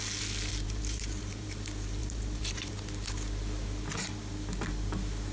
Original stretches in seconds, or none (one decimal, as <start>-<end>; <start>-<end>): 0.0-0.5; 1.5-2.0; 2.7-5.3